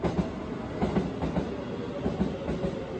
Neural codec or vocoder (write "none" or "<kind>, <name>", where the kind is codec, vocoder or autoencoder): none